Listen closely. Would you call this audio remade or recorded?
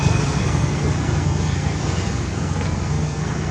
remade